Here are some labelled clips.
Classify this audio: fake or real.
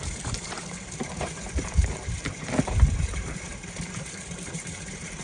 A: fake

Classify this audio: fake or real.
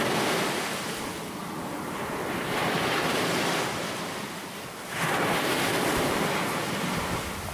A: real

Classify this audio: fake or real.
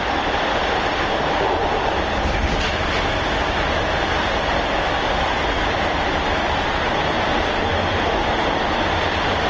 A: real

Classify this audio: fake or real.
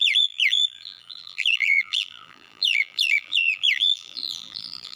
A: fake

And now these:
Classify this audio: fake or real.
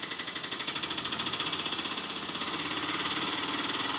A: fake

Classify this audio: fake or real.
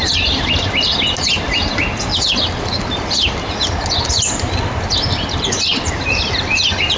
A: real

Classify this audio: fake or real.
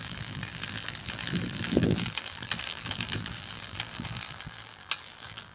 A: fake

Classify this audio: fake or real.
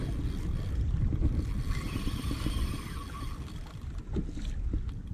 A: fake